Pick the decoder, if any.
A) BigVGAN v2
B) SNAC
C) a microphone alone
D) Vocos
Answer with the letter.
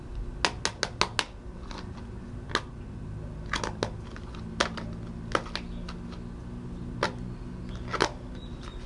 C